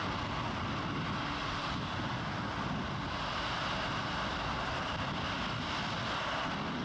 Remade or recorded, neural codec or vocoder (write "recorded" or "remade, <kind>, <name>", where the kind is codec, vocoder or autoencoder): recorded